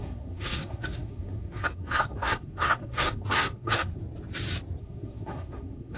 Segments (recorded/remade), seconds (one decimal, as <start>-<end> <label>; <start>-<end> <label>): 0.0-4.0 remade; 4.0-4.8 recorded; 4.8-6.0 remade